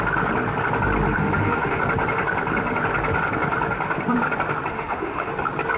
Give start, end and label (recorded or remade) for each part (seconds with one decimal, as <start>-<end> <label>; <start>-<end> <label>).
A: 0.0-1.1 recorded; 1.1-1.8 remade; 1.8-4.7 recorded; 4.7-5.3 remade; 5.3-5.8 recorded